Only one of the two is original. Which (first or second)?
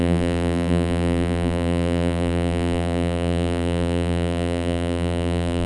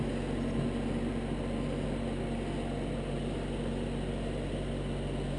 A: second